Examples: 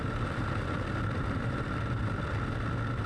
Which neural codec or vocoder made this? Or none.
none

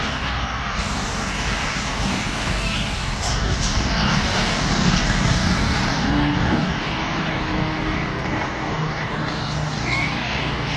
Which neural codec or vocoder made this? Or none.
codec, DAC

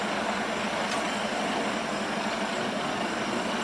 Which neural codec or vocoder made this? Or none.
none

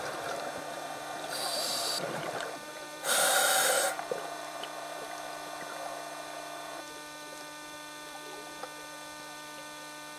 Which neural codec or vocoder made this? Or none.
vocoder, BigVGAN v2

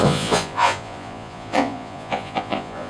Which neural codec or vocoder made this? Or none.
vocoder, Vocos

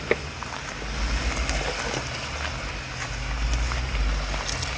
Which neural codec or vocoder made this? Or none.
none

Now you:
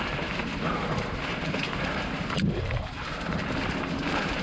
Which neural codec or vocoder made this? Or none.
vocoder, BigVGAN v2